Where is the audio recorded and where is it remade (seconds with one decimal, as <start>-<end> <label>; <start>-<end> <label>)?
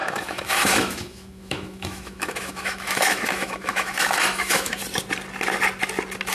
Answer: 0.0-4.8 remade; 4.8-6.3 recorded